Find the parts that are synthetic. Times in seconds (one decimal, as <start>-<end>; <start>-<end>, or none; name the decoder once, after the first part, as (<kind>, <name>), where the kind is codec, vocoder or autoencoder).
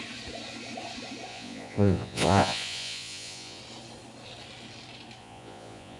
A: 1.3-3.6 (vocoder, Vocos); 5.2-6.0